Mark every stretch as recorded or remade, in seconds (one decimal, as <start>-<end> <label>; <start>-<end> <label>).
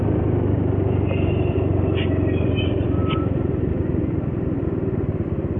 0.0-5.6 recorded